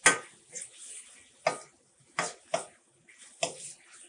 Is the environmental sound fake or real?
real